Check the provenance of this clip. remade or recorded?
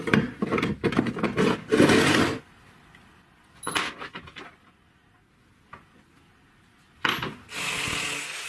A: recorded